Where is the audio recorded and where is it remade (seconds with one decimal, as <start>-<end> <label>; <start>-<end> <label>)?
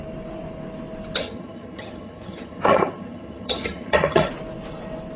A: 0.0-1.2 recorded; 1.2-4.3 remade; 4.3-5.2 recorded